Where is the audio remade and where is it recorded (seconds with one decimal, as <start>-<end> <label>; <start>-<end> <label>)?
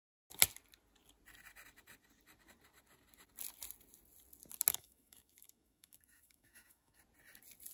0.0-4.7 recorded; 4.7-7.0 remade; 7.0-7.7 recorded